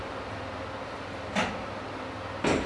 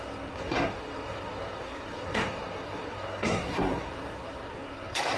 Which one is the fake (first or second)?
second